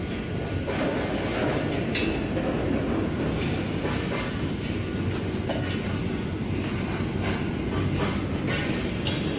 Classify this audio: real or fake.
real